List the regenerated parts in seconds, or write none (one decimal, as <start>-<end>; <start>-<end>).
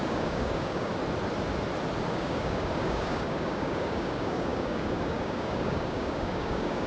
0.0-0.9; 2.1-6.9